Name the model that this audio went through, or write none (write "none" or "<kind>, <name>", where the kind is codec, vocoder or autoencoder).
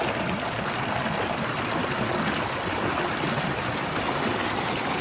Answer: none